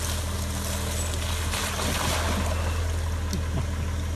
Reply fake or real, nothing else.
real